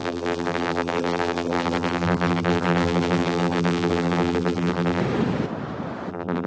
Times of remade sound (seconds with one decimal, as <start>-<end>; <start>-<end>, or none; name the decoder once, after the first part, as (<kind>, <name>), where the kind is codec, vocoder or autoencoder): 0.0-5.0 (vocoder, BigVGAN v2); 6.1-6.5